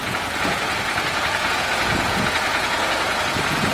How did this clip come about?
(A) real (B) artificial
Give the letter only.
B